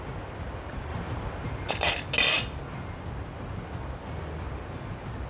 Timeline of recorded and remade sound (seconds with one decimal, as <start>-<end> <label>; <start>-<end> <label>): 0.0-5.3 recorded